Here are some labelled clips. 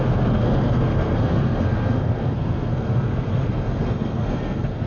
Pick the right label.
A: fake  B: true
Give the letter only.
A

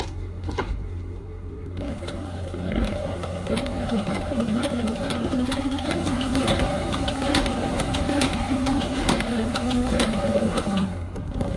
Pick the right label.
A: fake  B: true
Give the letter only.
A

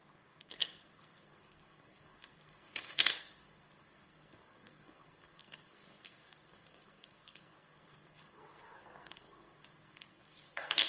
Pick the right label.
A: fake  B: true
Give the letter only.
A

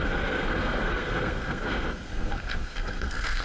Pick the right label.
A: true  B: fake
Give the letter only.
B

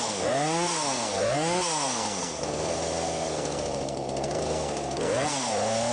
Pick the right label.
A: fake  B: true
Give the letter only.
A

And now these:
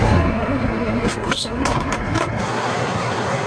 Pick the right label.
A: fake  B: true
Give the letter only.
A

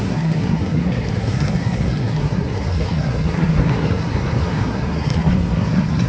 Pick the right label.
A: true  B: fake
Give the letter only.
B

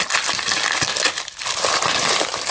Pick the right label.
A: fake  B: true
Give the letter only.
B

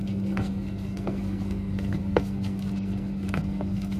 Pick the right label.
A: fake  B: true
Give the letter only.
A